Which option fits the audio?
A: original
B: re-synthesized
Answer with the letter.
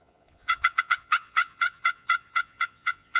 B